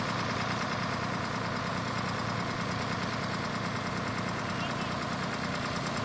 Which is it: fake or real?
real